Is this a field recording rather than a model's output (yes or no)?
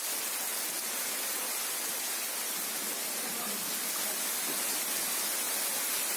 yes